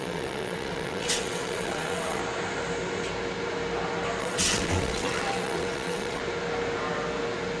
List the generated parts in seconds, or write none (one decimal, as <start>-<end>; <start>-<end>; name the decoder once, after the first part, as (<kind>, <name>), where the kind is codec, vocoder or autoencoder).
0.0-2.2 (vocoder, WaveNeXt); 4.2-6.2